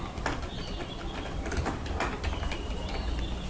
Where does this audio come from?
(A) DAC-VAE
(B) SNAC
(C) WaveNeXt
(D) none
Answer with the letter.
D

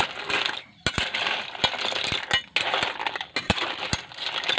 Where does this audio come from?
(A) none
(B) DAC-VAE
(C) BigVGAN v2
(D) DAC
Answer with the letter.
A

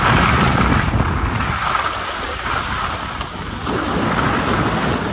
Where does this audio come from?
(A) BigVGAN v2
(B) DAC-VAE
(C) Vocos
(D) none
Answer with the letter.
D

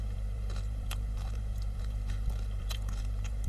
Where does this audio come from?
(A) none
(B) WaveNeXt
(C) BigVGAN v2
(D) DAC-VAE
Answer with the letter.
C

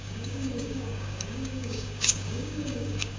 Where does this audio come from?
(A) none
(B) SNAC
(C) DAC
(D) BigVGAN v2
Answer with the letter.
C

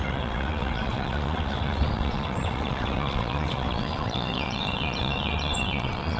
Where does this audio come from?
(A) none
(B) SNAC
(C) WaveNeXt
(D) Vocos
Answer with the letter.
C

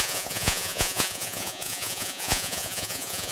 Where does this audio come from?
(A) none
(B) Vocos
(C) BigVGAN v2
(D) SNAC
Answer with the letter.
B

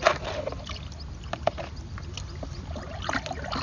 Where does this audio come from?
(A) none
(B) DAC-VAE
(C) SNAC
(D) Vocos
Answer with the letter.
A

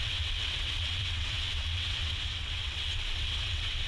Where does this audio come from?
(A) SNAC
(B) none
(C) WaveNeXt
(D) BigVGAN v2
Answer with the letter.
C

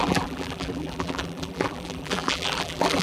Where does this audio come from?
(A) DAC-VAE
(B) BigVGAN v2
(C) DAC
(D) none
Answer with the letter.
B